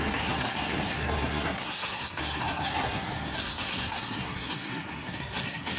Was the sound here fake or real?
fake